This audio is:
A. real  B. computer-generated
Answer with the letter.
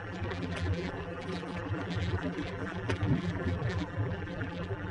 B